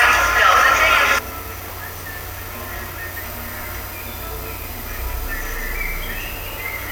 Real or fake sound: real